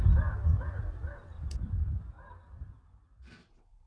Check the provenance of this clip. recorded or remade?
recorded